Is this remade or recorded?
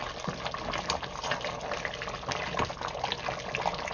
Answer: recorded